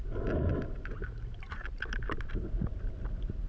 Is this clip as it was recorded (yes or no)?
yes